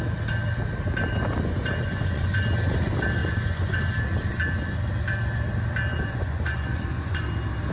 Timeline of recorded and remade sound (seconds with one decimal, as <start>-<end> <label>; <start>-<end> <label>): 0.0-1.4 recorded; 1.4-2.4 remade; 2.4-3.2 recorded; 3.2-3.8 remade; 3.8-5.9 recorded; 5.9-7.2 remade; 7.2-7.7 recorded